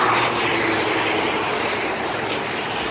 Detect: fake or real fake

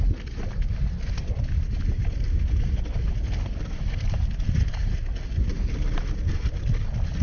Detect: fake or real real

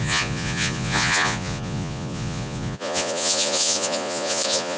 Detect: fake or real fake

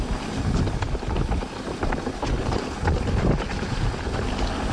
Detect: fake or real real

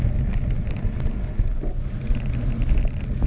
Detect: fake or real real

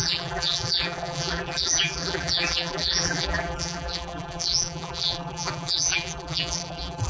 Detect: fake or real fake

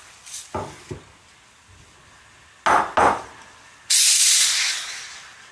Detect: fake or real real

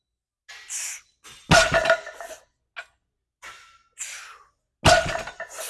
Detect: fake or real real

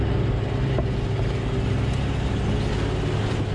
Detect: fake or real real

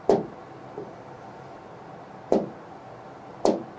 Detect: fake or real real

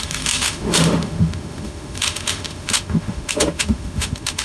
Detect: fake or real fake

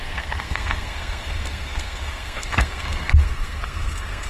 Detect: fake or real fake